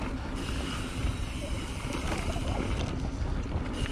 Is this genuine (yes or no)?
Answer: yes